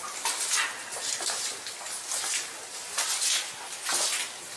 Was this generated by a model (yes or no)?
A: no